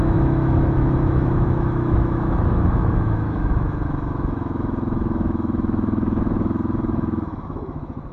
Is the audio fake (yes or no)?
yes